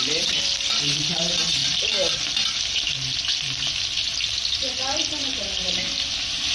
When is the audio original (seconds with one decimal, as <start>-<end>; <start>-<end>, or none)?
0.0-6.5